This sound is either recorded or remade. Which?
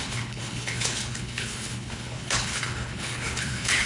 remade